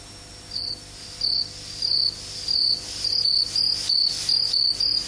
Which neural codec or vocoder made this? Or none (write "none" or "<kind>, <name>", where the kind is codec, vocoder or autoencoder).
none